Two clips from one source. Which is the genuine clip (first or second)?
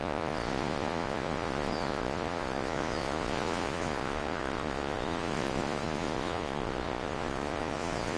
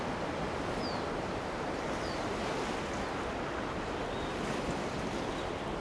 second